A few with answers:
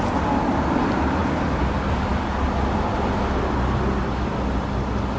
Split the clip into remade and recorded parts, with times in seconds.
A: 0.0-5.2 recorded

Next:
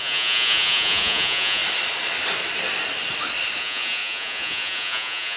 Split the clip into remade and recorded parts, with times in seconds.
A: 0.0-1.6 remade; 1.6-3.6 recorded; 3.6-5.4 remade